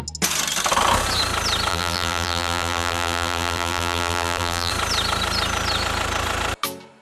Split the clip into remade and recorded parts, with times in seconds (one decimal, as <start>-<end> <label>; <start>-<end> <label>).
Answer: 0.0-1.7 recorded; 1.7-4.7 remade; 4.7-7.0 recorded